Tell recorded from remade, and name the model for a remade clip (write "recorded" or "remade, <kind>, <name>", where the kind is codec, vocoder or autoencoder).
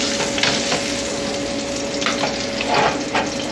recorded